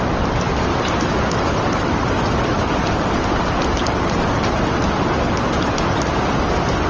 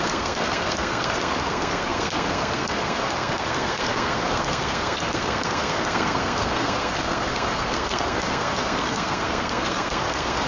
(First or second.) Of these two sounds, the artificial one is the second